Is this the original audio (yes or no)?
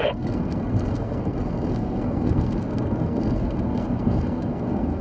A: no